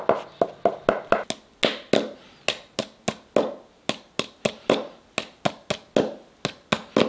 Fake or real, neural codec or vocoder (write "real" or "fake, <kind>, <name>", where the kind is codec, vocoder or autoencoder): real